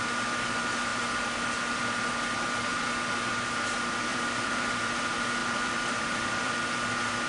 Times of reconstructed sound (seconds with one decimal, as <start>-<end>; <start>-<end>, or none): 4.1-5.0; 5.4-6.5